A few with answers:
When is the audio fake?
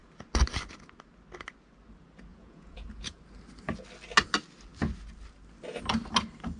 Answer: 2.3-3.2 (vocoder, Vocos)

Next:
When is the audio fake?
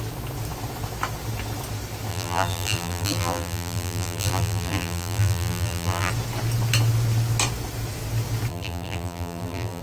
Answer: 2.1-6.1 (vocoder, BigVGAN v2); 8.5-9.8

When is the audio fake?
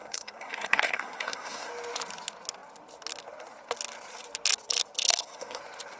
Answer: 0.0-1.7 (codec, SNAC); 5.1-5.6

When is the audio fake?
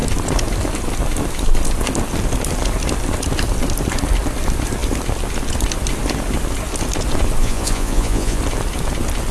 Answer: 7.4-8.4 (vocoder, Vocos)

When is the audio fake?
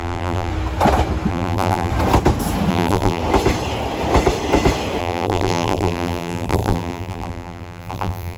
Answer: 0.0-0.5 (vocoder, BigVGAN v2); 1.3-1.9; 2.7-3.2; 5.0-8.4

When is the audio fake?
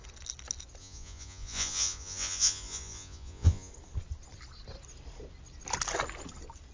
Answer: 0.8-3.7 (vocoder, Vocos)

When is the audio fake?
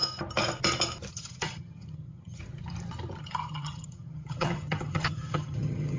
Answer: 1.1-2.4 (vocoder, HiFi-GAN); 3.2-6.0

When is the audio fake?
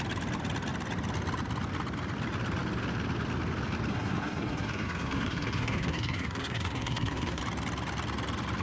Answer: 3.9-7.4 (codec, SNAC)